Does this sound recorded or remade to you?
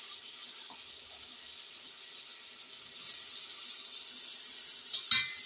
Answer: recorded